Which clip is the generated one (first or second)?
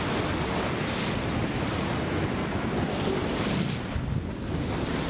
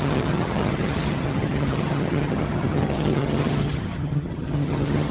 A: second